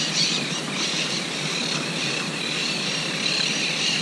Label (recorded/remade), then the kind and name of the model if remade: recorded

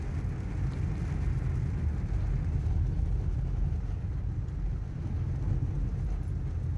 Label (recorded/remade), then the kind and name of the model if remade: recorded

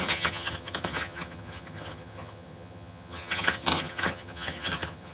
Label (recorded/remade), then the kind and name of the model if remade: remade, vocoder, HiFi-GAN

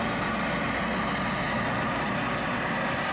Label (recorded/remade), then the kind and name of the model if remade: recorded